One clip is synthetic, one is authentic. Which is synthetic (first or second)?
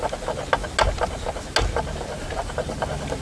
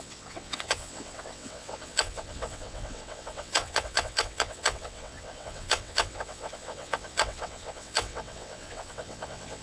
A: second